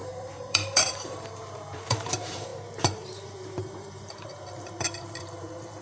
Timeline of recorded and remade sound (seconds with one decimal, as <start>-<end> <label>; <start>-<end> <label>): 0.0-5.8 remade